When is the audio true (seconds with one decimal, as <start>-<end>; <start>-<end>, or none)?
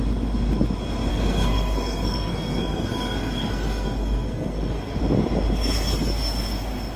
0.0-1.1; 5.0-7.0